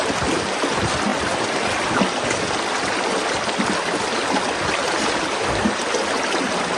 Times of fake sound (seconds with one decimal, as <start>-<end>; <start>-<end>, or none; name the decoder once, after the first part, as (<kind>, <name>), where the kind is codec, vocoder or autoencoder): none